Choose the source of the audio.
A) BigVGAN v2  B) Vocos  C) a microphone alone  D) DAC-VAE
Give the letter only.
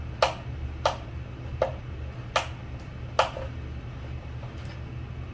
C